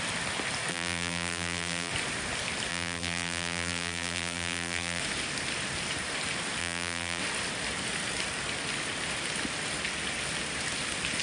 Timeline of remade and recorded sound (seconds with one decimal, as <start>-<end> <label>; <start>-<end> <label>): 0.0-0.7 recorded; 0.7-1.9 remade; 1.9-2.7 recorded; 2.7-5.0 remade; 5.0-6.6 recorded; 6.6-7.2 remade; 7.2-11.2 recorded